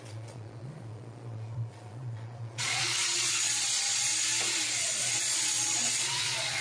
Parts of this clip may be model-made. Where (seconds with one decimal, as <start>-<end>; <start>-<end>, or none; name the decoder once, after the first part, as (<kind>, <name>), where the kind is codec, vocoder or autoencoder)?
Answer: 0.0-4.1 (vocoder, Vocos); 4.8-6.6